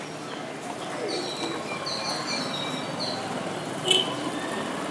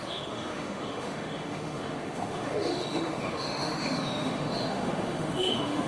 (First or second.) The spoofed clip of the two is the second